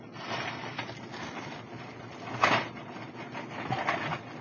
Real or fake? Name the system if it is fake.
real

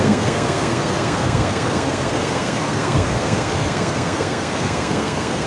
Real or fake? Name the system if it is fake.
fake, codec, SNAC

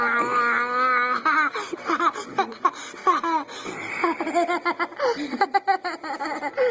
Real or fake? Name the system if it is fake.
real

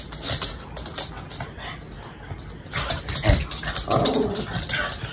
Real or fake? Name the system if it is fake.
real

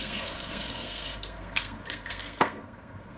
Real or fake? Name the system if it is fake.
fake, codec, SNAC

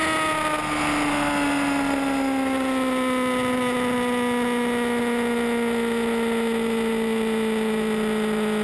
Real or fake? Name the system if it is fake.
real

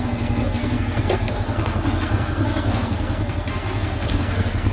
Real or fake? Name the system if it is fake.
fake, codec, SNAC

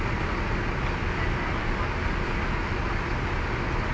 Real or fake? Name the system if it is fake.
real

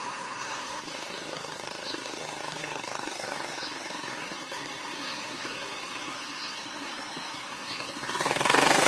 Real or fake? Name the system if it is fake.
fake, codec, SNAC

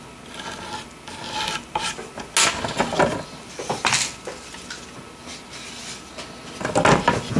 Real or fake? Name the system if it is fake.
real